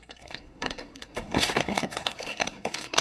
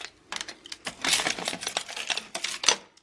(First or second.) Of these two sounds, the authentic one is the second